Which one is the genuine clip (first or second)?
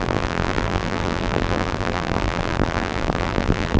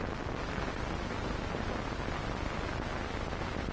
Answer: second